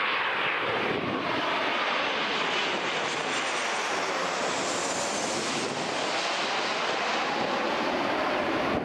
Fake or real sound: real